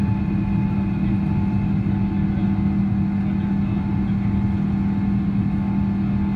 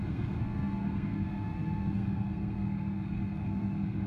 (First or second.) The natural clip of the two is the first